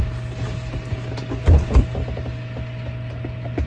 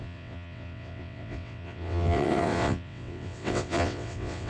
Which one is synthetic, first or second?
second